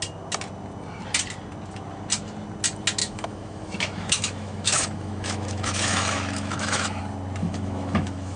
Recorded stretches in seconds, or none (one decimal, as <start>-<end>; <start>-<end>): 0.0-3.0; 7.0-7.4